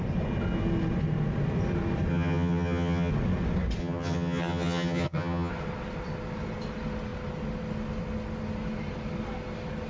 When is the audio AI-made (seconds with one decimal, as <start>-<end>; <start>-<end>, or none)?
2.1-3.1; 3.8-5.5